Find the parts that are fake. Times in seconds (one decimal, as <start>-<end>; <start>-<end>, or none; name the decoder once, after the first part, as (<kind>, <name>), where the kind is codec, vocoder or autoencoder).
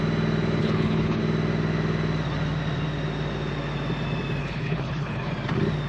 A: 0.6-1.2 (codec, HILCodec); 4.4-5.3